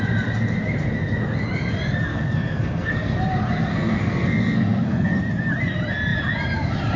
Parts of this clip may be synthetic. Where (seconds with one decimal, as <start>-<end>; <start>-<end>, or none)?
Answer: 2.1-3.2; 3.7-5.2